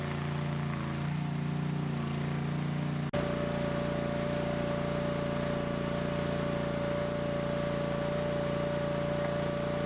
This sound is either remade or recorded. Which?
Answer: recorded